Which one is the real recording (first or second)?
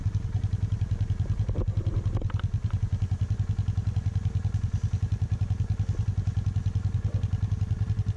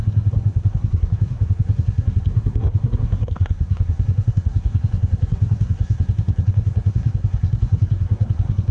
first